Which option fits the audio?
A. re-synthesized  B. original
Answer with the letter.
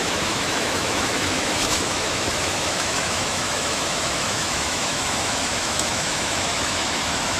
A